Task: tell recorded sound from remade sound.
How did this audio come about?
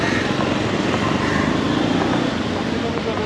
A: recorded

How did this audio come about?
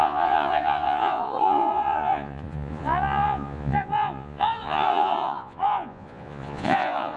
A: remade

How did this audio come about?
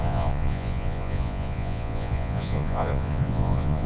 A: remade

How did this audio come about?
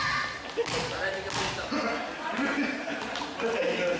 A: recorded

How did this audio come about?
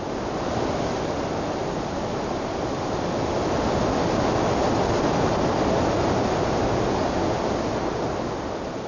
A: recorded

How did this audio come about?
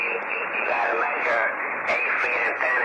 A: remade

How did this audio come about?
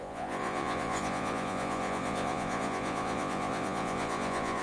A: remade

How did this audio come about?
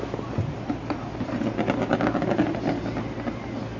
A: recorded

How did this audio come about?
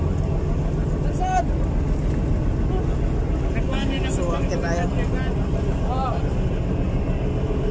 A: recorded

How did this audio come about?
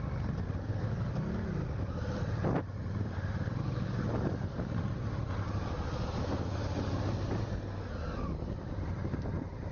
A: recorded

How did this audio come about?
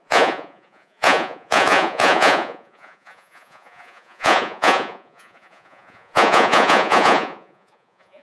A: remade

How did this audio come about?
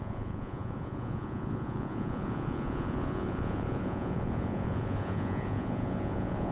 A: remade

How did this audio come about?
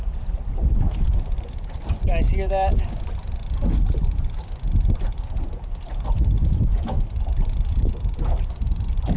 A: recorded